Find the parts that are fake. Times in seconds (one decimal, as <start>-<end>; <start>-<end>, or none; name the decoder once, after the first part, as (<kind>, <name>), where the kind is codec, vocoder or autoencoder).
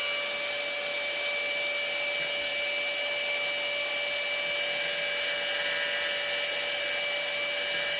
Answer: none